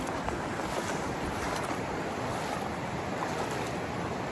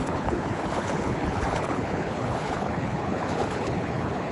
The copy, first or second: second